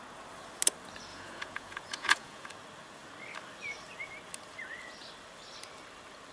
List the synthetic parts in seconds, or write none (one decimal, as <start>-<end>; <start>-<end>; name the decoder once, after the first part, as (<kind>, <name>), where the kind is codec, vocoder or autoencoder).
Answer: 1.1-2.5 (vocoder, Vocos)